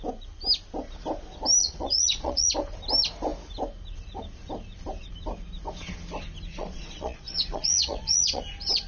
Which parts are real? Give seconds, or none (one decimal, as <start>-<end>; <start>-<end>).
0.0-1.6; 2.5-6.5; 8.4-8.9